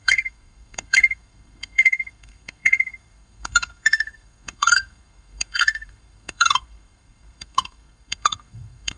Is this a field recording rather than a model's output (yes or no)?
no